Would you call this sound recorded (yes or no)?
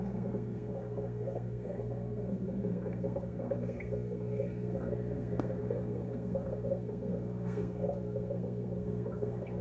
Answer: no